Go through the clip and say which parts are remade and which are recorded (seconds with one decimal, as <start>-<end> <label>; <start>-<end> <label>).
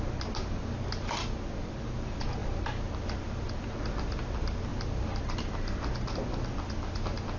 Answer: 0.0-7.4 recorded